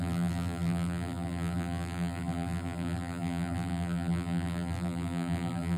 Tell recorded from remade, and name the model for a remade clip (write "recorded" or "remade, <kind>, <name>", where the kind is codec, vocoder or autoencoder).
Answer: remade, vocoder, BigVGAN v2